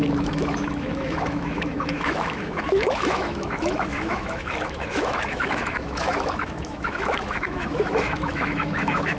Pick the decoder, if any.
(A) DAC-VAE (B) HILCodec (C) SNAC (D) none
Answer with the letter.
A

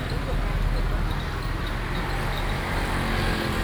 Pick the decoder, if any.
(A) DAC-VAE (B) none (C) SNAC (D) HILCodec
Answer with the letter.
B